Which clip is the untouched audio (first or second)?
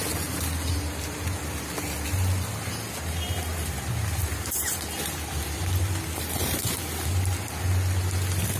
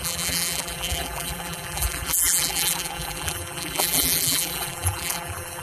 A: first